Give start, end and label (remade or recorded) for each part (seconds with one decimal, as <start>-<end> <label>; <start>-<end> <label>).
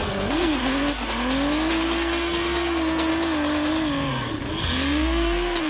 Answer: 0.0-0.6 remade; 0.6-1.7 recorded; 1.7-3.1 remade; 3.1-4.1 recorded; 4.1-5.7 remade